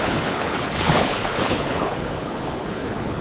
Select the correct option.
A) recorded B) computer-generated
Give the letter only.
B